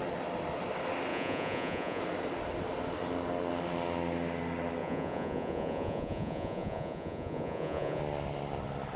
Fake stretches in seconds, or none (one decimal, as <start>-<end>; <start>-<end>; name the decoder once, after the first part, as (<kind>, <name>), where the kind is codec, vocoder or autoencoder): 1.1-2.0 (vocoder, Vocos); 4.8-8.0